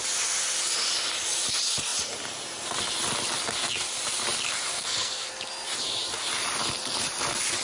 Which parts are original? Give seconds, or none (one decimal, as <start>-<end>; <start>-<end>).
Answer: 0.0-4.7; 5.3-7.6